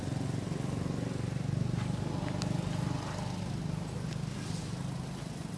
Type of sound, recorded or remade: recorded